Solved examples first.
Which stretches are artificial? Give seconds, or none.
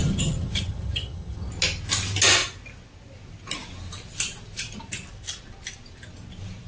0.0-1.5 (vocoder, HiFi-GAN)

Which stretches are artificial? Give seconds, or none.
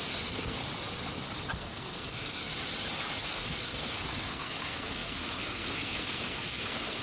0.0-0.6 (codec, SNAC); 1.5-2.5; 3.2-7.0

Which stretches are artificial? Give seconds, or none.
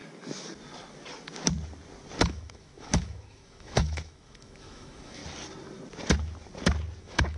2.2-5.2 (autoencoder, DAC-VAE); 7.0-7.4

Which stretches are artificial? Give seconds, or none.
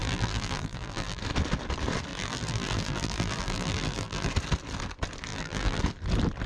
0.0-1.2 (vocoder, BigVGAN v2); 2.1-4.3; 5.3-5.8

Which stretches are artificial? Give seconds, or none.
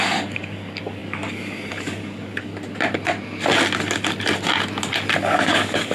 0.0-2.5 (codec, DAC); 5.2-5.9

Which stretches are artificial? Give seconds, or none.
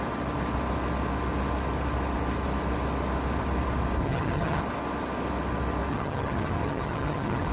4.0-4.6 (vocoder, HiFi-GAN); 5.9-7.5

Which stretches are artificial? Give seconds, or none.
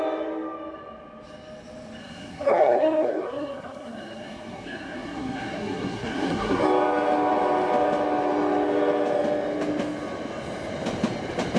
2.0-6.6 (codec, SNAC)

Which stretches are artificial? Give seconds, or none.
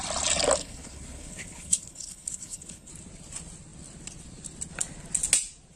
0.6-2.9 (codec, HILCodec)